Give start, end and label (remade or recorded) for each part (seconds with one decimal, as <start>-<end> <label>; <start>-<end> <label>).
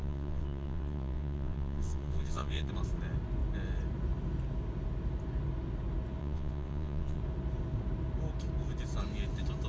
0.0-2.7 remade; 2.7-6.2 recorded; 6.2-7.2 remade; 7.2-9.7 recorded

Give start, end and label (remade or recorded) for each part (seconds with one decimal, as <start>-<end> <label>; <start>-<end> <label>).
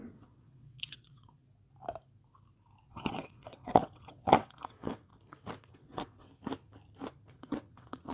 0.0-1.4 remade; 1.4-2.8 recorded; 2.8-5.1 remade; 5.1-5.7 recorded; 5.7-6.3 remade; 6.3-7.3 recorded; 7.3-8.1 remade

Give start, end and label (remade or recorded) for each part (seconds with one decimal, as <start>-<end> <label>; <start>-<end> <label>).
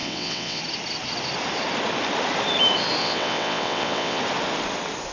0.0-0.6 remade; 0.6-3.0 recorded; 3.0-4.2 remade; 4.2-5.1 recorded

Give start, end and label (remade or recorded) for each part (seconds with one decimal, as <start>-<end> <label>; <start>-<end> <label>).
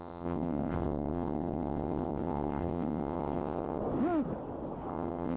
0.0-3.8 remade; 3.8-4.9 recorded; 4.9-5.4 remade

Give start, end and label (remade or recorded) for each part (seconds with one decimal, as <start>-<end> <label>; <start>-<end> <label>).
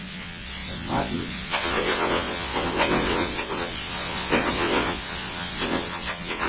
0.0-6.5 remade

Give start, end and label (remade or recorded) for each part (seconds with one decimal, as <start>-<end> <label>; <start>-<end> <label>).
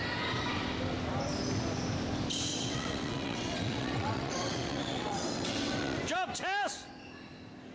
0.0-2.5 recorded; 2.5-6.0 remade; 6.0-7.7 recorded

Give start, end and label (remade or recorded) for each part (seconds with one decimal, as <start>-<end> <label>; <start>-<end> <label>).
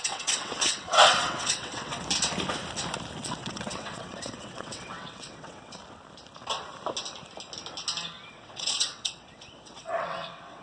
0.0-2.0 remade; 2.0-3.2 recorded; 3.2-5.8 remade; 5.8-8.3 recorded; 8.3-10.6 remade